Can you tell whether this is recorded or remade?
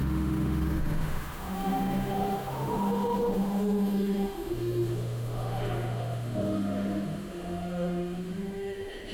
remade